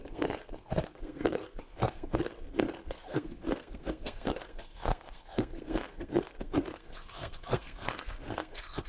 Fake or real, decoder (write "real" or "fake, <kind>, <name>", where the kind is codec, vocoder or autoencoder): fake, codec, SNAC